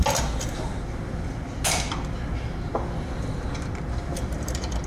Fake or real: fake